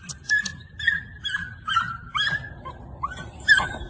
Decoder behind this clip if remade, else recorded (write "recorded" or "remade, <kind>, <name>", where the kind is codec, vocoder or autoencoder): recorded